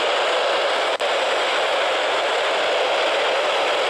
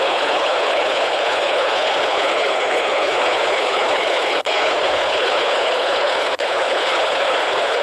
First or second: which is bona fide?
first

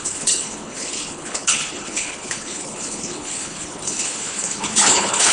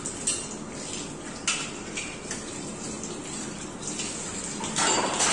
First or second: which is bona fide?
second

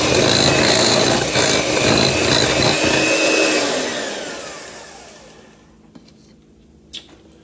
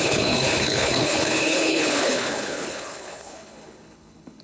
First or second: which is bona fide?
first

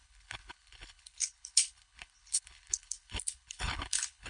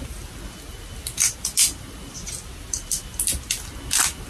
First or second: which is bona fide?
second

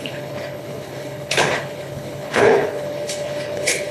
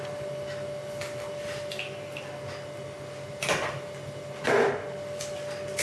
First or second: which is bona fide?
second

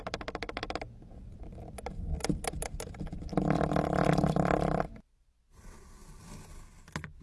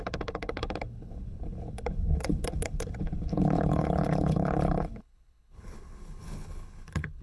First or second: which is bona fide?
first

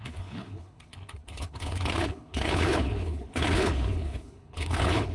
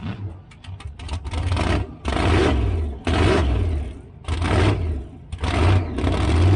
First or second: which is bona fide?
second